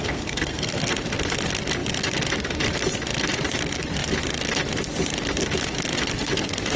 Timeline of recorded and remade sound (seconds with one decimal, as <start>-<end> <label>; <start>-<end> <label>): 0.0-0.9 remade; 0.9-6.8 recorded